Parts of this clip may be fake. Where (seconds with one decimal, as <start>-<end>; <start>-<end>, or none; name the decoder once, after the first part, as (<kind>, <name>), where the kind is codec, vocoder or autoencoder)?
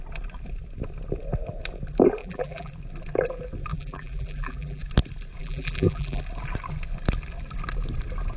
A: 2.2-2.7 (vocoder, BigVGAN v2); 3.7-4.8; 5.4-6.2